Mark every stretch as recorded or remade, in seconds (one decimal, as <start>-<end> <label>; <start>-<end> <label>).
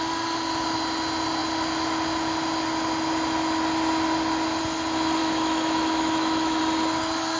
0.0-5.2 recorded; 5.2-6.6 remade; 6.6-7.4 recorded